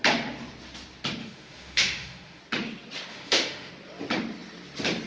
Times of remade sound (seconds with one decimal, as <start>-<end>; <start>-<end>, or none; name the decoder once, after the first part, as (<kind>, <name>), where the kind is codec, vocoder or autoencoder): 1.2-2.4 (autoencoder, DAC-VAE); 3.1-3.7